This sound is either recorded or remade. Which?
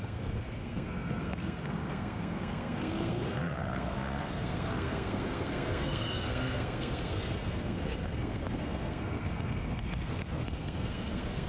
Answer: remade